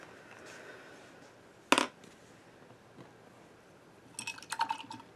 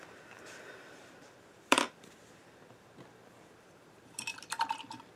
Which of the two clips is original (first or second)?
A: first